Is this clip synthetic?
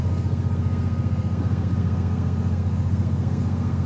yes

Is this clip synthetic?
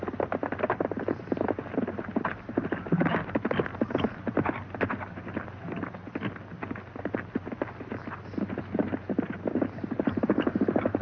no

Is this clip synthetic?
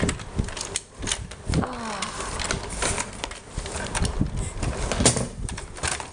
no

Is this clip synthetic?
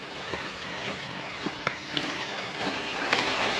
yes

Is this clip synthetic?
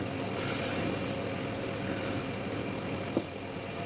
no